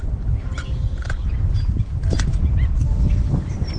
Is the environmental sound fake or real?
real